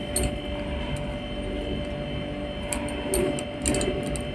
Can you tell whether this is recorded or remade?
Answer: recorded